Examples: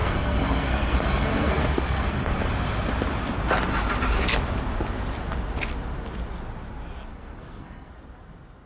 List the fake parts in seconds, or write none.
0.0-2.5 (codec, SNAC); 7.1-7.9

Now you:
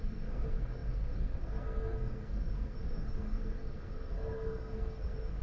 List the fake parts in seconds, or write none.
0.0-5.4 (codec, SNAC)